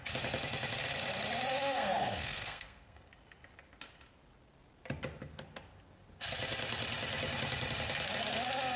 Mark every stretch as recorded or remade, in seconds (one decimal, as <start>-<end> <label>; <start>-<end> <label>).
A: 0.0-1.5 recorded; 1.5-3.1 remade; 3.1-8.8 recorded